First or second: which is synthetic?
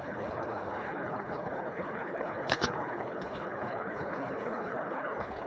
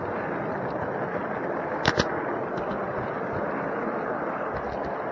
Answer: first